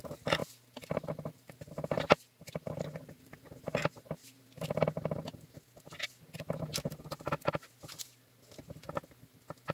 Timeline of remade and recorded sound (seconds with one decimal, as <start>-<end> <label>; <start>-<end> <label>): 0.0-0.4 recorded; 0.4-4.4 remade; 4.4-9.7 recorded